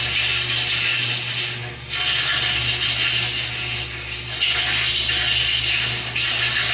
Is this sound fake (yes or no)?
no